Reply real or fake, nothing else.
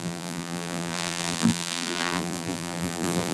fake